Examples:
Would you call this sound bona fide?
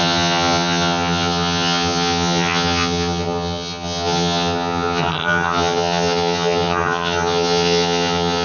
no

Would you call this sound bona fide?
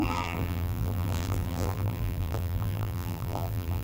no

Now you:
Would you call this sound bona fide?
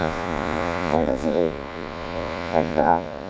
no